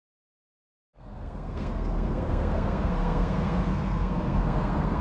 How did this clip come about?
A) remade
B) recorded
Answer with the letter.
A